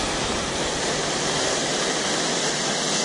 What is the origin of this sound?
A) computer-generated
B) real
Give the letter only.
B